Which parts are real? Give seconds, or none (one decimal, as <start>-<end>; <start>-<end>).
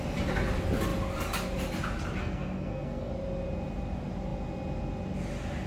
0.0-2.2; 3.1-5.7